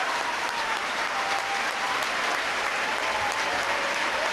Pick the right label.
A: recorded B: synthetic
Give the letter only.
B